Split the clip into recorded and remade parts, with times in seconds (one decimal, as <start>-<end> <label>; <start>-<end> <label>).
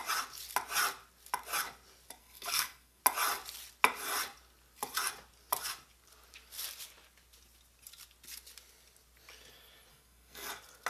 0.0-2.2 recorded; 2.2-3.0 remade; 3.0-9.9 recorded; 9.9-10.5 remade; 10.5-10.9 recorded